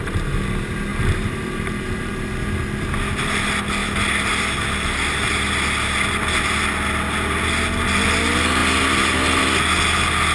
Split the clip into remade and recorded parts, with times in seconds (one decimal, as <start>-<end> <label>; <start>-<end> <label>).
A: 0.0-0.9 recorded; 0.9-2.1 remade; 2.1-10.3 recorded